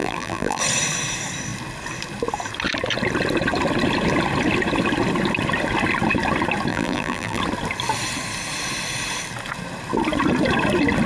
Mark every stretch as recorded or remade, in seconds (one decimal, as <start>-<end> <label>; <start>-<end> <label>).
0.0-0.6 remade; 0.6-6.7 recorded; 6.7-7.4 remade; 7.4-11.1 recorded